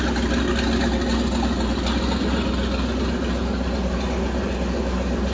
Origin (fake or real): real